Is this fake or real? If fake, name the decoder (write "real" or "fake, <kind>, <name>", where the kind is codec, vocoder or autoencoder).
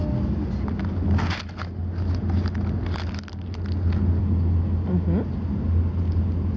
real